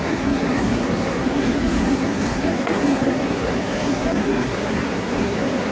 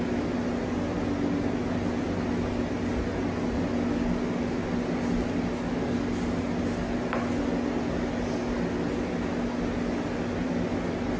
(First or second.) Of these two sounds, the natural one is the second